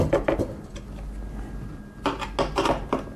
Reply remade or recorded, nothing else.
recorded